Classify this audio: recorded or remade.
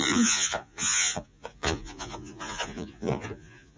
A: remade